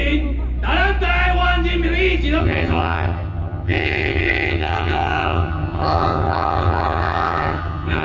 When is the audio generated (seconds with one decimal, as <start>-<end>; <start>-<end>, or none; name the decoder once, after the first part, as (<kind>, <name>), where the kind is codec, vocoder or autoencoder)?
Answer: 2.4-8.0 (vocoder, HiFi-GAN)